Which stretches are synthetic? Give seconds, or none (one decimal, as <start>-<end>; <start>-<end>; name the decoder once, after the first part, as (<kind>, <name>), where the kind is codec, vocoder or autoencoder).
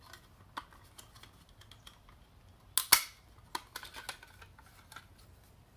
none